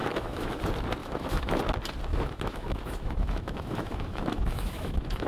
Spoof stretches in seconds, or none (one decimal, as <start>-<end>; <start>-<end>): 0.0-0.6; 1.0-1.6; 2.1-5.3